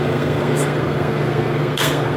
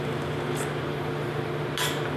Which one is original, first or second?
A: second